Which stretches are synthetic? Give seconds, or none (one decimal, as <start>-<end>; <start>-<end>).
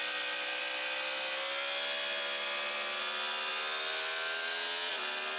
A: none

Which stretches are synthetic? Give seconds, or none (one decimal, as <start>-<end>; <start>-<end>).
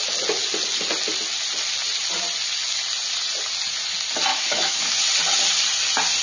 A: 4.3-4.9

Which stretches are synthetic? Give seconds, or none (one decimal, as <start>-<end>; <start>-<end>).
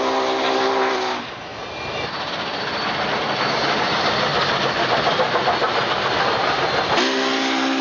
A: none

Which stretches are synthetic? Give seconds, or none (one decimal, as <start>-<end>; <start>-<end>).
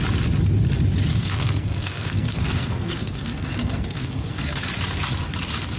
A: 1.1-4.6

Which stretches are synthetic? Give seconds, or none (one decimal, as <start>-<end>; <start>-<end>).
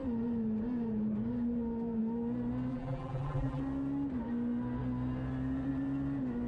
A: 2.7-3.6